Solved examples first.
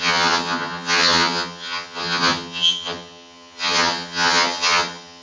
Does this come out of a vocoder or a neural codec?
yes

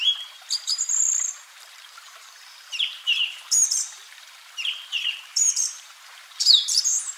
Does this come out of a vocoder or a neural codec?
yes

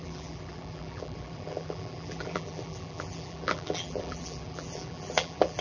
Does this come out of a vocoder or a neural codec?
yes